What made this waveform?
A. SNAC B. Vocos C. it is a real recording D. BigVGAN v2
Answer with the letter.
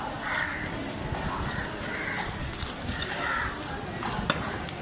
C